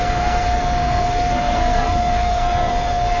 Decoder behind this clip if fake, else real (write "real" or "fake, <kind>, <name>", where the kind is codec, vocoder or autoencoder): fake, codec, SNAC